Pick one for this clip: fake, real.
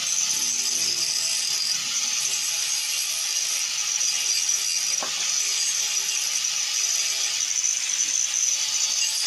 real